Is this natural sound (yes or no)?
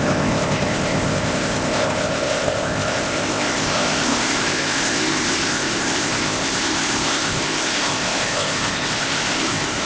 no